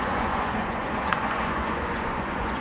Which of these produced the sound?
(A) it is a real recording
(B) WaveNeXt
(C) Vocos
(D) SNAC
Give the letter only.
C